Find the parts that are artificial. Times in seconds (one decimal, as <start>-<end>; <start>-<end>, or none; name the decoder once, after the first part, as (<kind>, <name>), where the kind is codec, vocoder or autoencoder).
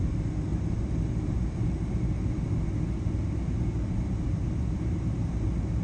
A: none